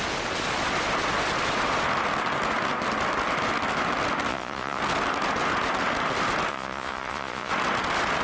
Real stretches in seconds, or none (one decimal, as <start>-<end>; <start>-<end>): 0.0-4.3; 4.8-6.5; 7.5-8.2